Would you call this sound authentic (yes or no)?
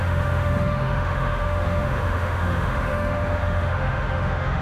no